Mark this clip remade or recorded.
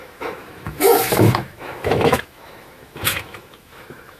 remade